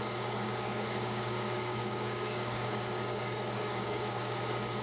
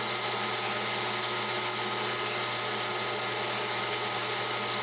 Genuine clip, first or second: second